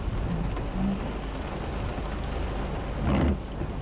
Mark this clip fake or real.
real